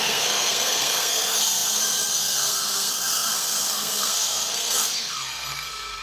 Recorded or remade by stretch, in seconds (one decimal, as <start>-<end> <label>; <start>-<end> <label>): 0.0-6.0 remade